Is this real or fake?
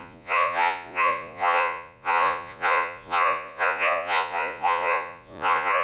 fake